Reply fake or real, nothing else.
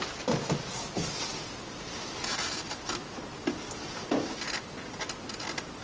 real